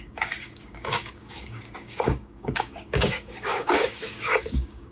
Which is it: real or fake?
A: fake